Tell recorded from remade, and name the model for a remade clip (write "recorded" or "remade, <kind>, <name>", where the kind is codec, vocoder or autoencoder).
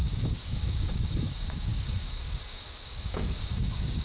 remade, codec, DAC